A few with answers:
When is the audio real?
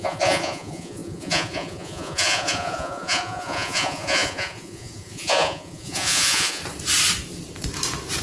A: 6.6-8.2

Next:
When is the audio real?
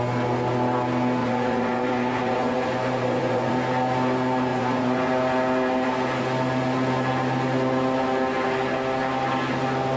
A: 0.0-1.2; 3.5-4.5; 5.1-10.0